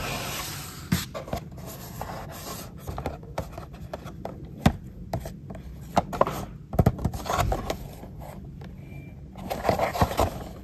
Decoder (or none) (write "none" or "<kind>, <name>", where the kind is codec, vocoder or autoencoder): none